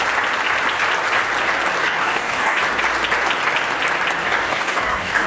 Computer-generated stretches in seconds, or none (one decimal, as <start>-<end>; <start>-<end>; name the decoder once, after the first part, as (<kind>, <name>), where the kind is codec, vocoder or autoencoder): 1.8-2.6 (codec, DAC); 4.2-5.3